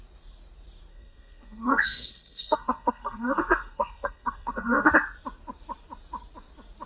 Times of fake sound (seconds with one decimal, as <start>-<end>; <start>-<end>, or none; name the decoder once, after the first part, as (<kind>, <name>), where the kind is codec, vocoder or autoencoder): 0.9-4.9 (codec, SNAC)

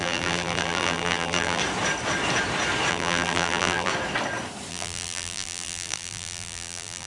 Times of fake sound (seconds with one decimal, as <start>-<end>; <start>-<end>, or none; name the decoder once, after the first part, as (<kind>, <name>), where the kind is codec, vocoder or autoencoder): 0.0-1.6 (vocoder, BigVGAN v2); 2.9-3.9; 4.7-7.1

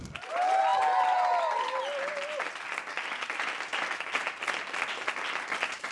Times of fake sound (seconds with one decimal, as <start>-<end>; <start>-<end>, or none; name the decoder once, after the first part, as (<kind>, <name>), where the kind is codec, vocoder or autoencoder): none